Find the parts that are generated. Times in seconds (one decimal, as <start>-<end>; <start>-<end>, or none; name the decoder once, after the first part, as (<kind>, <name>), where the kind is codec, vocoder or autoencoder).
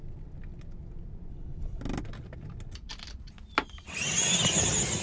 1.3-1.8 (codec, HILCodec)